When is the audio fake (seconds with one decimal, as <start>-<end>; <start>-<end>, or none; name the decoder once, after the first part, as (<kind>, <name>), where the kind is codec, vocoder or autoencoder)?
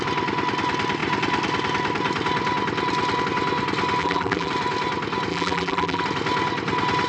4.0-4.5 (vocoder, BigVGAN v2); 5.3-6.0